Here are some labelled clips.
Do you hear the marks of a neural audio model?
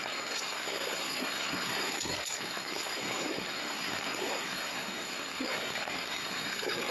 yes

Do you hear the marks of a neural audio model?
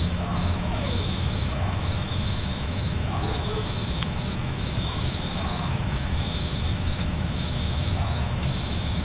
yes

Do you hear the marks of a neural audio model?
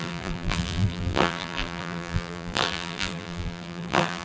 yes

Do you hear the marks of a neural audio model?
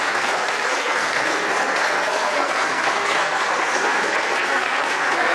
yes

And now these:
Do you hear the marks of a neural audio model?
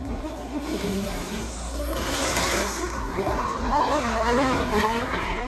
yes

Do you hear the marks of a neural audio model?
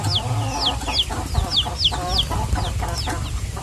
no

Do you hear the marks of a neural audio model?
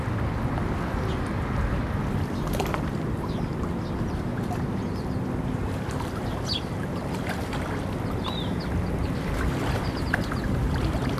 no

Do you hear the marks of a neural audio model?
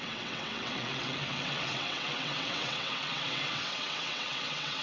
yes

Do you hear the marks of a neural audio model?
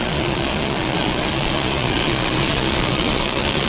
yes